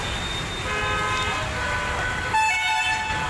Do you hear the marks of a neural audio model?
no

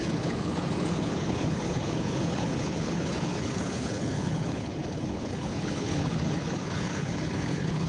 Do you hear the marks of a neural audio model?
yes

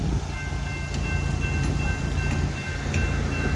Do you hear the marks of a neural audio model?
no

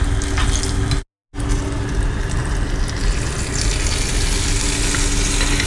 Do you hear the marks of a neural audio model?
no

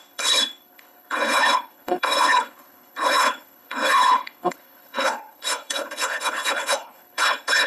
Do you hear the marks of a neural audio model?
yes